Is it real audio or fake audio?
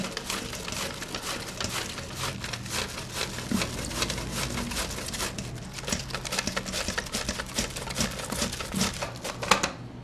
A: real